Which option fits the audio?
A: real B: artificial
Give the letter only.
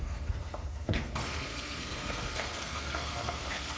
B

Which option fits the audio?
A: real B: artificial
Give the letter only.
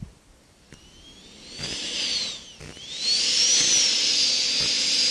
A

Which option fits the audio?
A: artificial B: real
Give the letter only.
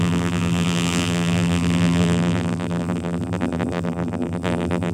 A